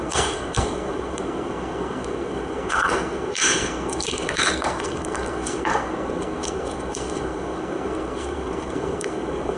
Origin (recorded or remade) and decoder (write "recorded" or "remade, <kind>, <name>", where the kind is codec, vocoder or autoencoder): remade, codec, SNAC